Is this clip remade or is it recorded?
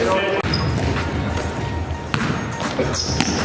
recorded